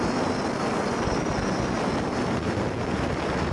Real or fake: real